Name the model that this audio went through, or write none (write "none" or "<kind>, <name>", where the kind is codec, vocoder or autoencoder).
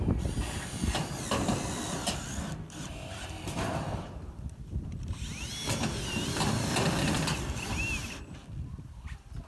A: vocoder, BigVGAN v2